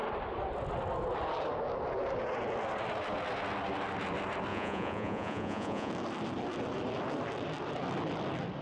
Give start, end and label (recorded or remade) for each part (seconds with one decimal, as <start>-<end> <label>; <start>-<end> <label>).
0.0-4.5 recorded; 4.5-5.9 remade; 5.9-8.6 recorded